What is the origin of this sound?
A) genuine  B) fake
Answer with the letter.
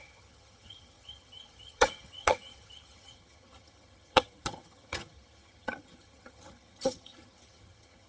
B